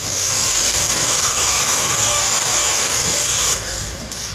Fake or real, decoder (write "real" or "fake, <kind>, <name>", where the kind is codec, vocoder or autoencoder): fake, codec, DAC